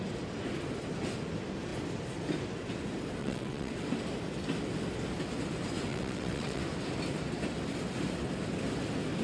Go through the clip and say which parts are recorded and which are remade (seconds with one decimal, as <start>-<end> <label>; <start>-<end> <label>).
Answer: 0.0-3.2 recorded; 3.2-3.7 remade; 3.7-5.9 recorded; 5.9-6.6 remade; 6.6-9.2 recorded